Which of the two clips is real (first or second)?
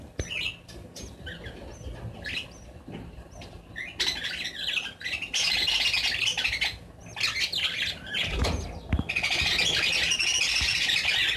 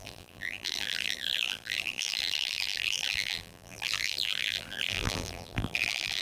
first